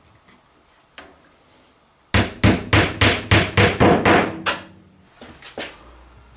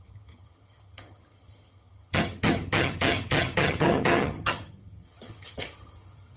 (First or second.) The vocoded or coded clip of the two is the second